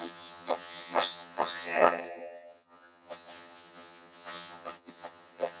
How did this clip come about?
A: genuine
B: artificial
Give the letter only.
B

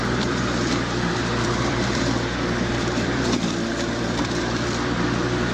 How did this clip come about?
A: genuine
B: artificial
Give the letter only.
B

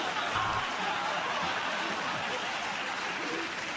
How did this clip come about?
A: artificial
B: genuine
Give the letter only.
B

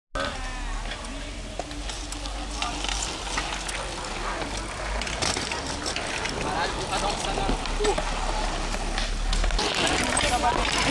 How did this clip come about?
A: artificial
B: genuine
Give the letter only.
B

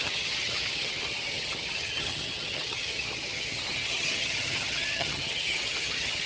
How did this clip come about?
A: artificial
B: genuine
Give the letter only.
A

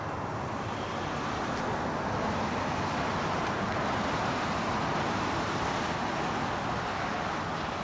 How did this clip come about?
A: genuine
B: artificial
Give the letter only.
A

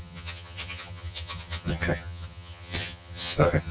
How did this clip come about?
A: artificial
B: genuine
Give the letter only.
A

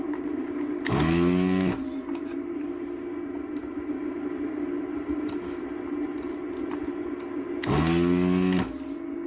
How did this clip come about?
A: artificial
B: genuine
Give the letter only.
B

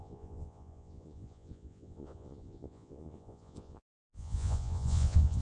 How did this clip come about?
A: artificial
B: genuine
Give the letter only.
A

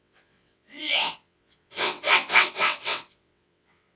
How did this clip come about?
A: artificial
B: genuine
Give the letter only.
A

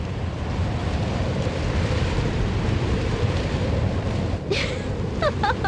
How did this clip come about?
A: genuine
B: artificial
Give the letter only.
B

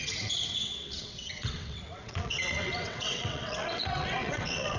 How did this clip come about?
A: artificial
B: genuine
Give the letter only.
A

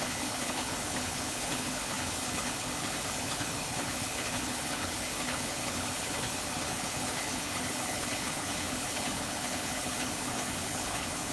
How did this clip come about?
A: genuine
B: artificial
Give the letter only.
B